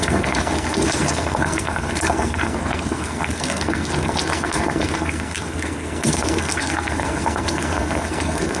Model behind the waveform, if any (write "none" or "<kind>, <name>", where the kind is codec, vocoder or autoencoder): codec, SNAC